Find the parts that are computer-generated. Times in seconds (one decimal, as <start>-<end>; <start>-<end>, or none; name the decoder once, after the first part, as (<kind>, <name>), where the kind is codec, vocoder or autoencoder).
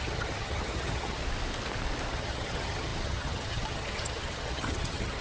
0.0-1.2 (vocoder, HiFi-GAN); 2.1-5.2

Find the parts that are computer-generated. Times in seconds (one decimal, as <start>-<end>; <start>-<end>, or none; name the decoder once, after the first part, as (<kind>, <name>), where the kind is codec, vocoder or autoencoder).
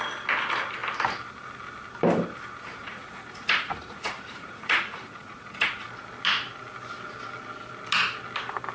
2.8-5.7 (vocoder, Vocos)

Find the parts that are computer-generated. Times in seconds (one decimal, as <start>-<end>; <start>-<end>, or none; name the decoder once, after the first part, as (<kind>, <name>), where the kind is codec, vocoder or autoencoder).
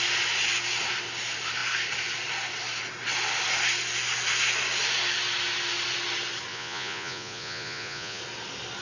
6.5-8.2 (vocoder, Vocos)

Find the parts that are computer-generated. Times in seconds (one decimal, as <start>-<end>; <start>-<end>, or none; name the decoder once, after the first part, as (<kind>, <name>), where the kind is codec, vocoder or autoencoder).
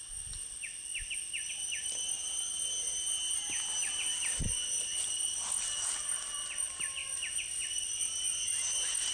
7.0-7.6 (vocoder, BigVGAN v2)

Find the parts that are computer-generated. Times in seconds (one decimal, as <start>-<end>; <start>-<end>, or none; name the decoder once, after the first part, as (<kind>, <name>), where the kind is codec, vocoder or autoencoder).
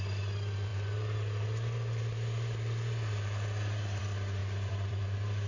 4.4-5.0 (vocoder, BigVGAN v2)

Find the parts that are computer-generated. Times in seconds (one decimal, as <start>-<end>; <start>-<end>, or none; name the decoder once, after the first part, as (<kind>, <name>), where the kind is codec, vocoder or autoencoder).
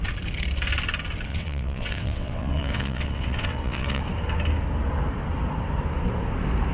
1.3-4.0 (vocoder, WaveNeXt)